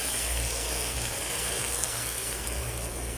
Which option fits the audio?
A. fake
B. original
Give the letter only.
A